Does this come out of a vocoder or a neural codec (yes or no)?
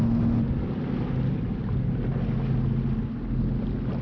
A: no